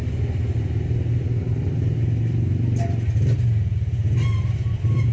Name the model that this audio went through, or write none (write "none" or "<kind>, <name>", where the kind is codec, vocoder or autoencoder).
none